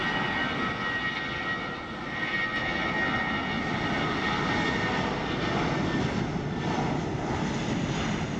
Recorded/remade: recorded